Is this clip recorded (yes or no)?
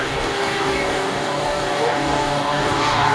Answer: no